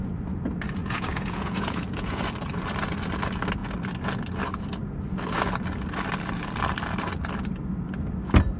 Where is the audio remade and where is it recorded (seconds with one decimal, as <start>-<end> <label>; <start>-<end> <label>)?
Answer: 0.0-0.8 recorded; 0.8-2.2 remade; 2.2-8.6 recorded